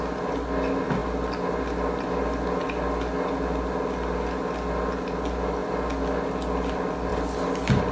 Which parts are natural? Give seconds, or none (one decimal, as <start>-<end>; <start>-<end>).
0.0-7.9